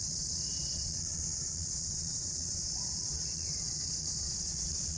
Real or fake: fake